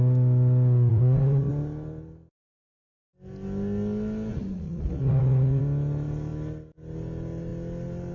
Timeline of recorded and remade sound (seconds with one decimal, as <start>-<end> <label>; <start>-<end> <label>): 0.0-0.9 recorded; 0.9-1.5 remade; 1.5-4.3 recorded; 4.3-5.6 remade; 5.6-8.1 recorded